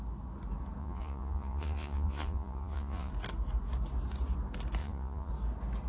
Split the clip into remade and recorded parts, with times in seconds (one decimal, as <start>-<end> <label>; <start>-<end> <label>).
0.0-0.8 recorded; 0.8-3.1 remade; 3.1-4.8 recorded; 4.8-5.3 remade; 5.3-5.9 recorded